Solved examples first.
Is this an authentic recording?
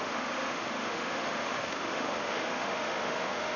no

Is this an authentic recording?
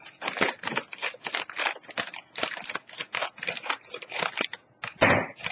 yes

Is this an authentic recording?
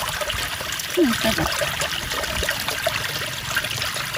yes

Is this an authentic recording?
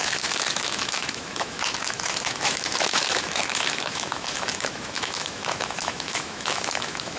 no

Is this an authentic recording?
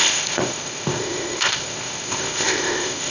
no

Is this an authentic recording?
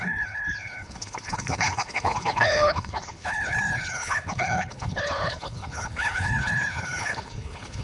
no